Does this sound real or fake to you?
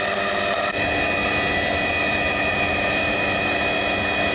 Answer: real